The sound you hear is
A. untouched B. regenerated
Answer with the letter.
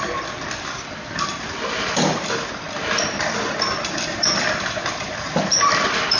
A